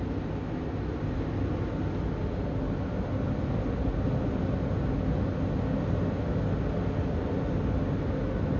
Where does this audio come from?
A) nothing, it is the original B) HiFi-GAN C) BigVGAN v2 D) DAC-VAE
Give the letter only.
A